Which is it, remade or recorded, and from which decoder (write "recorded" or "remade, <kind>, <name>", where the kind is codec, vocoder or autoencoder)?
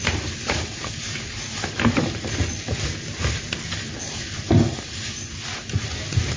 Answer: recorded